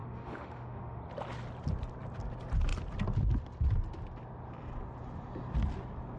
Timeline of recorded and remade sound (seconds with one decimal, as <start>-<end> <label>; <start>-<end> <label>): 0.0-1.0 remade; 1.0-6.2 recorded